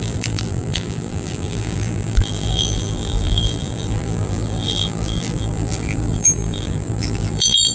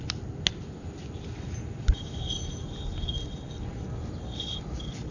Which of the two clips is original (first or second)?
second